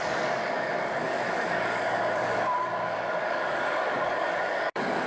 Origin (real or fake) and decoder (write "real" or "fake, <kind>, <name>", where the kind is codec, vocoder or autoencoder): fake, codec, DAC